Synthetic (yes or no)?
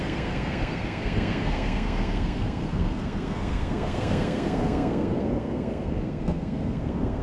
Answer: yes